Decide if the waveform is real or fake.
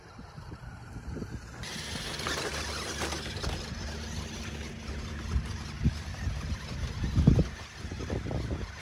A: real